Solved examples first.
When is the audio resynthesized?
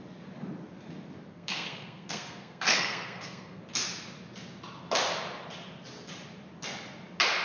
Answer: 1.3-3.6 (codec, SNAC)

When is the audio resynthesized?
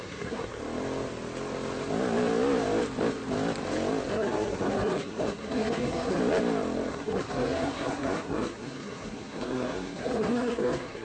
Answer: 0.0-0.6 (codec, SNAC); 4.1-6.2; 6.9-11.0